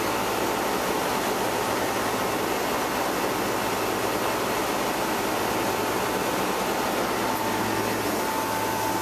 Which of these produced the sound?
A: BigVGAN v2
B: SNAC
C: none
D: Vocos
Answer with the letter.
C